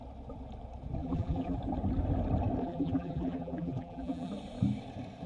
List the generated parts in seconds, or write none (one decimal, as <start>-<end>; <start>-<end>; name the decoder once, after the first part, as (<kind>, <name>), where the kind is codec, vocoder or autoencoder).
1.0-1.6 (vocoder, BigVGAN v2); 2.6-4.3